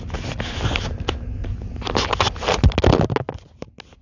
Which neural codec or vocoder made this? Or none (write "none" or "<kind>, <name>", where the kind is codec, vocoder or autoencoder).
none